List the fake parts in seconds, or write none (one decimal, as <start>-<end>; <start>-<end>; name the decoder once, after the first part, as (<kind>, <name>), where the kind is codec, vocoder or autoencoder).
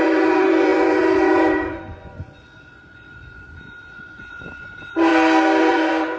0.0-5.1 (vocoder, Vocos); 5.6-6.2